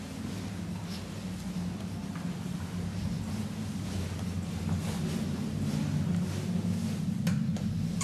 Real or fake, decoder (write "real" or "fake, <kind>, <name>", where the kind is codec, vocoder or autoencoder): real